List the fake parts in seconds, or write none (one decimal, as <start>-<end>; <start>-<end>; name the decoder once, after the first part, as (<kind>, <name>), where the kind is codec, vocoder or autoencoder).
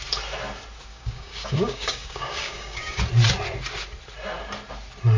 0.9-3.0 (codec, DAC)